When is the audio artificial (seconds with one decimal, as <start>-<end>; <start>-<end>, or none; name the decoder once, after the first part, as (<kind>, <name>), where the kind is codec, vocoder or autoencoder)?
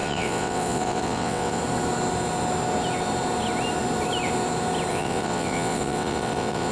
0.0-1.6 (vocoder, WaveNeXt); 4.9-6.7